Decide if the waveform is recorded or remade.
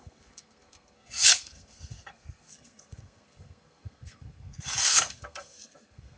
remade